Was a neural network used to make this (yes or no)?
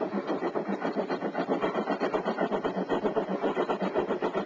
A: no